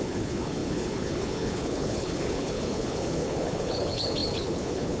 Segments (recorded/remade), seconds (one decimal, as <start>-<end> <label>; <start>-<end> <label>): 0.0-5.0 remade